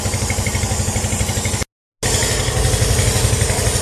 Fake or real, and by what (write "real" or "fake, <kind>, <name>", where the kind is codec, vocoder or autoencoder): real